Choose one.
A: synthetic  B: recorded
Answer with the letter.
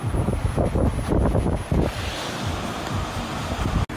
B